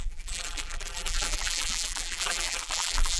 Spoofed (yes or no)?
yes